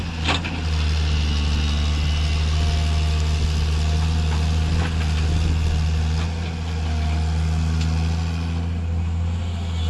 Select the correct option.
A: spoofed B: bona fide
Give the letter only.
B